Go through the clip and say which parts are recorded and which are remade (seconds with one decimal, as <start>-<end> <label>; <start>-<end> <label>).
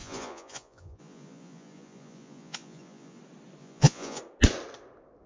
0.0-3.2 remade; 3.2-3.6 recorded; 3.6-4.2 remade; 4.2-5.3 recorded